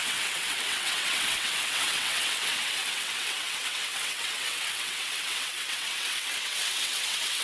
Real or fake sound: fake